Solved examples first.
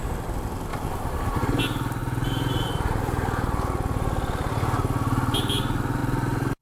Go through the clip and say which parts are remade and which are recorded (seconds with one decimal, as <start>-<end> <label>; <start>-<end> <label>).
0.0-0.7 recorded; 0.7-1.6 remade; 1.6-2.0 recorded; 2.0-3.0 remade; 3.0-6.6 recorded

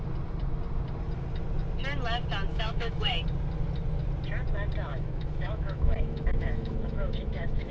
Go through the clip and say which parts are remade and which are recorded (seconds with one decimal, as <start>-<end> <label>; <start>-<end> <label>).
0.0-2.5 recorded; 2.5-3.1 remade; 3.1-4.9 recorded; 4.9-7.7 remade

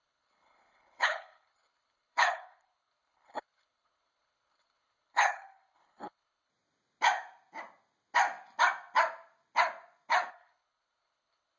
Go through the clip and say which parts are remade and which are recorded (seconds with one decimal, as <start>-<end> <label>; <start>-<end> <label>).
0.0-6.5 remade; 6.5-10.3 recorded; 10.3-11.6 remade

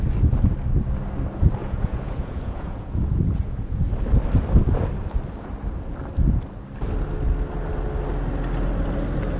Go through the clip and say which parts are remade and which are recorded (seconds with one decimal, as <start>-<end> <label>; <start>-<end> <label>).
0.0-1.6 recorded; 1.6-3.8 remade; 3.8-9.4 recorded

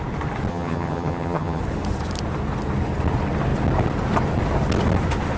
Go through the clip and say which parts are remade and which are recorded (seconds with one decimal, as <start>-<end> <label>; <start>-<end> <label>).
0.0-0.5 recorded; 0.5-1.6 remade; 1.6-5.4 recorded